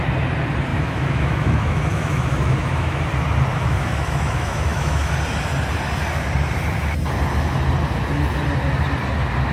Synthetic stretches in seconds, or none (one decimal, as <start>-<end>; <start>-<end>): 0.7-3.0; 3.5-5.1

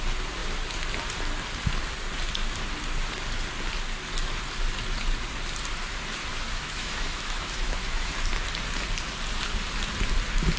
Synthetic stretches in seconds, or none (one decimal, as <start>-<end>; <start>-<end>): 6.3-8.1

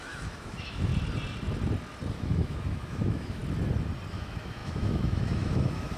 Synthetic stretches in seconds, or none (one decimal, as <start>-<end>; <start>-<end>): 0.0-0.9; 2.1-3.4; 4.1-6.0

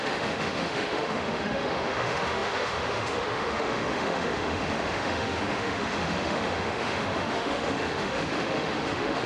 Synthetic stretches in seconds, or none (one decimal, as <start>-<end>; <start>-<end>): 0.0-9.3

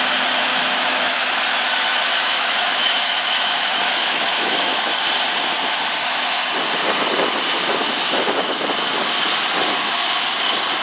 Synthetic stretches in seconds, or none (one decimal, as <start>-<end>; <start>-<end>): 0.5-4.8

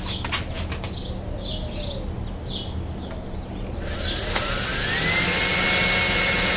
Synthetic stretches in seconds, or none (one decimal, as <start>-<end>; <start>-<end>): none

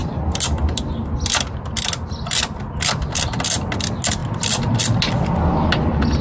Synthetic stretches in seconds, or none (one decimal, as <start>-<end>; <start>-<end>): none